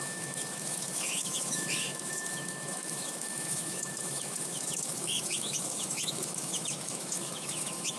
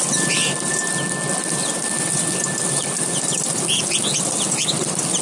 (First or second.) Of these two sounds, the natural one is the second